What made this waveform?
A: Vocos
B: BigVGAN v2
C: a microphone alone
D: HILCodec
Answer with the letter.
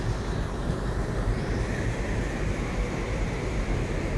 B